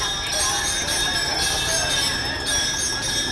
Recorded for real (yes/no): yes